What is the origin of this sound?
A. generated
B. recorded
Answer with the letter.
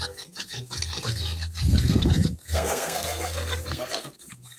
A